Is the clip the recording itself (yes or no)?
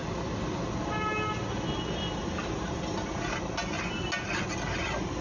yes